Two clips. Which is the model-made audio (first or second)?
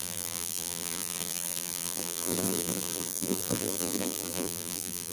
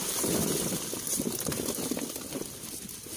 first